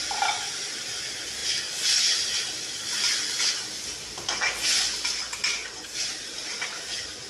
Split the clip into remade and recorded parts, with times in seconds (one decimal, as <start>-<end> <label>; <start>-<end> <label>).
0.0-5.6 recorded; 5.6-6.2 remade; 6.2-7.3 recorded